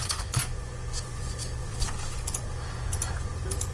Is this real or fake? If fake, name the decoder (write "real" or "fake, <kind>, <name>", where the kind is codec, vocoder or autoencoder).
fake, vocoder, Vocos